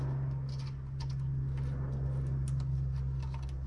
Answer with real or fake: real